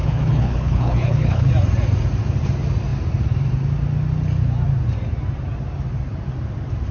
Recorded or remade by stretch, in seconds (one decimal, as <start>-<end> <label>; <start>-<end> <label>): 0.0-1.5 remade; 1.5-6.9 recorded